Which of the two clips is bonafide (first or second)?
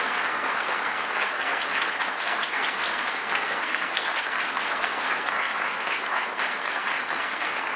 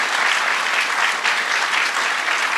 second